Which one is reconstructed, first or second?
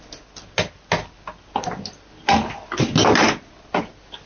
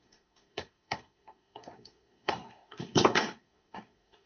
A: second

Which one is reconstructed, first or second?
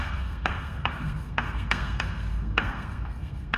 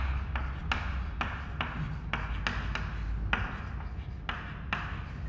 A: first